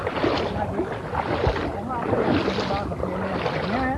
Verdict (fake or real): real